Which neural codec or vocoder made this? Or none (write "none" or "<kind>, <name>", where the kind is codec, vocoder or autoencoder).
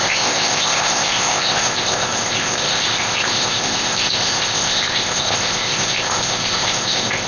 codec, ZipCodec